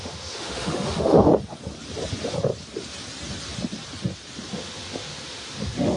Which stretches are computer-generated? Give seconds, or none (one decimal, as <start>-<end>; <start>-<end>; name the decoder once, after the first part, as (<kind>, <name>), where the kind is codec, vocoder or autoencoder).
0.0-1.3 (autoencoder, DAC-VAE); 4.5-6.0